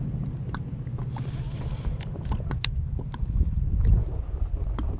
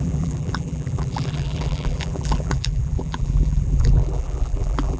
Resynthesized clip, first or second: second